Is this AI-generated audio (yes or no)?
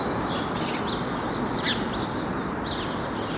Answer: no